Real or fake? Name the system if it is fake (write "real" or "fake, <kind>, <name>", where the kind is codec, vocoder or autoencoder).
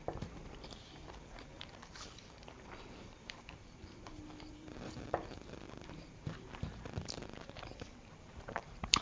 fake, vocoder, BigVGAN v2